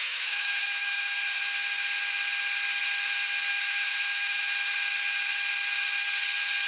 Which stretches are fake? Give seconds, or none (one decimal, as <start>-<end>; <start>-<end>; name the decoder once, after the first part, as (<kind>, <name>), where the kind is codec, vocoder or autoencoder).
0.0-1.4 (autoencoder, DAC-VAE); 3.5-4.4